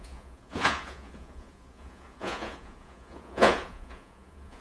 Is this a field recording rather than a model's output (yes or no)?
no